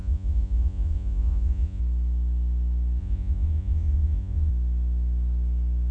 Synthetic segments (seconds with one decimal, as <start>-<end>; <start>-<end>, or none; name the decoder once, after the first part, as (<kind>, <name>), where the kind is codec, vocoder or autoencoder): 0.0-1.8 (vocoder, Vocos); 3.0-4.5

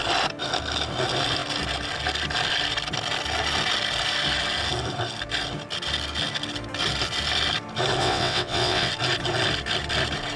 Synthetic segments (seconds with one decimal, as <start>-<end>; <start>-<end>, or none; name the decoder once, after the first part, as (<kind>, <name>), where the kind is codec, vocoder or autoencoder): 8.0-8.9 (vocoder, WaveNeXt)

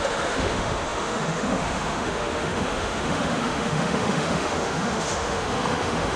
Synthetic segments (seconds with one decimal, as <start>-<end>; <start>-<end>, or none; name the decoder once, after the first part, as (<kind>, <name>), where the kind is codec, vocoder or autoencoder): 0.0-6.2 (autoencoder, DAC-VAE)

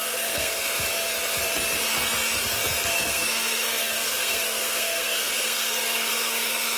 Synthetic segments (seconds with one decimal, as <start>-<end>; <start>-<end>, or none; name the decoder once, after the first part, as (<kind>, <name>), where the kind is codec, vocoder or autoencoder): 0.0-0.7 (codec, SNAC); 2.8-6.8

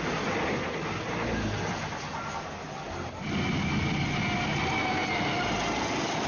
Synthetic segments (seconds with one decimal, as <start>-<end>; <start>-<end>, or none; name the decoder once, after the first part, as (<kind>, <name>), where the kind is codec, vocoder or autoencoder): none

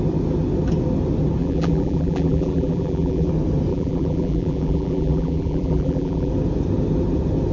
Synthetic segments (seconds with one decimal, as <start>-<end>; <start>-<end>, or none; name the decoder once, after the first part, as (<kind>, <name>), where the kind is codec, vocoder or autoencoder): 1.4-3.3 (vocoder, BigVGAN v2); 3.7-6.3

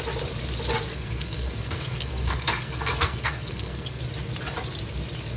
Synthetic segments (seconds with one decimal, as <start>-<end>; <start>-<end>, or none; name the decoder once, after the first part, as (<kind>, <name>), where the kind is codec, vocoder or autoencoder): 0.9-4.0 (codec, SNAC)

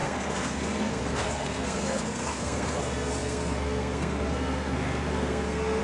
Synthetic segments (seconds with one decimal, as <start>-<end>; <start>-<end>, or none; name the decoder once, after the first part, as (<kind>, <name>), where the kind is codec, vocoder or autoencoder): 0.0-5.8 (codec, SNAC)